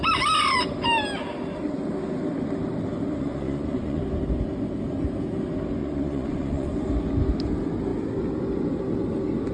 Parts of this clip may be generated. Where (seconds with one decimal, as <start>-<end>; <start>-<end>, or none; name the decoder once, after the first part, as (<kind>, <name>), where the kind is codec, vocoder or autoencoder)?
3.2-4.0 (vocoder, Vocos); 5.8-6.7